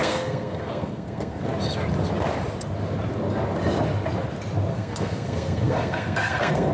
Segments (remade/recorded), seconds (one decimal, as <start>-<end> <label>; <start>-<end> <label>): 0.0-1.4 remade; 1.4-4.7 recorded; 4.7-6.7 remade

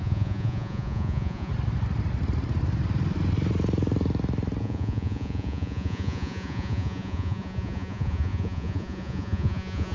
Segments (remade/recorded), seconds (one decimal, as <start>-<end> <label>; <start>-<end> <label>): 0.0-1.5 remade; 1.5-4.6 recorded; 4.6-9.9 remade

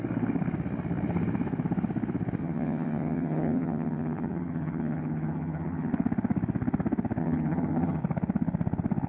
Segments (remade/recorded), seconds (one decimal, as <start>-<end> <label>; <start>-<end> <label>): 0.0-2.4 recorded; 2.4-5.9 remade; 5.9-7.2 recorded; 7.2-8.0 remade; 8.0-9.1 recorded

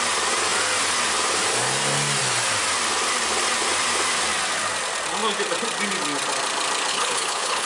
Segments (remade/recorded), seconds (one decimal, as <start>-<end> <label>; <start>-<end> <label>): 0.0-6.9 recorded; 6.9-7.7 remade